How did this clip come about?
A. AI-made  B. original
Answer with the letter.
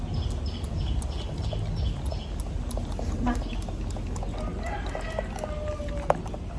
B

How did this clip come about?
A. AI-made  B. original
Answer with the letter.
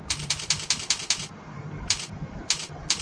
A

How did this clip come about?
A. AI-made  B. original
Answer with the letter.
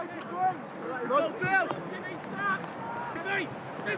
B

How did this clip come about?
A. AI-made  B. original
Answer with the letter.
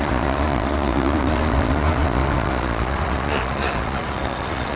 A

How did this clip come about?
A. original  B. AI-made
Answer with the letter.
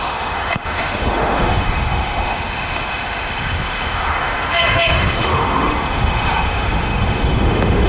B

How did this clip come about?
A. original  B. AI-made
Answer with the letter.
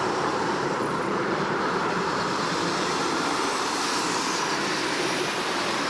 B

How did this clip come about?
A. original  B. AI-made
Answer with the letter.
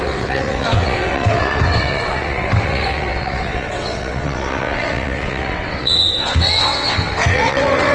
B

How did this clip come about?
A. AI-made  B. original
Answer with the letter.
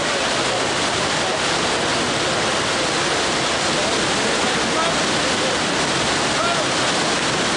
B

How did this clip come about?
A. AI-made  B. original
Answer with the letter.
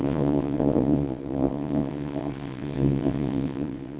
A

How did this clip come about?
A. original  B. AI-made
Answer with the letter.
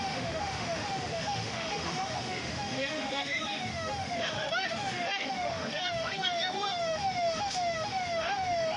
B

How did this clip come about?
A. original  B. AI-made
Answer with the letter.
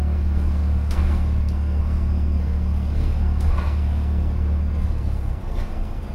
B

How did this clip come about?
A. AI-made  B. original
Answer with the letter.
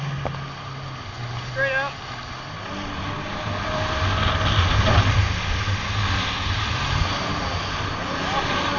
B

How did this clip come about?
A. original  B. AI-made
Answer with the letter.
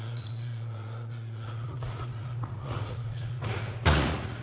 B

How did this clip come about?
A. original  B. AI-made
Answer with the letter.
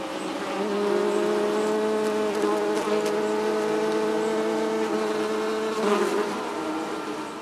A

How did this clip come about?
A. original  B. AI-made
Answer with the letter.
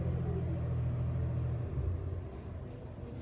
A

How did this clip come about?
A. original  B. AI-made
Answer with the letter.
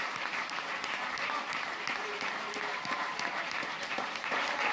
B